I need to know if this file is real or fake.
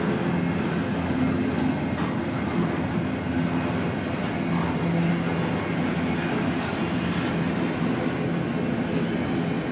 real